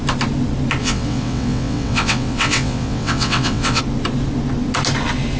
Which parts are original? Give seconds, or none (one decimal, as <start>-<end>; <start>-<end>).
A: 0.0-0.8; 3.8-5.4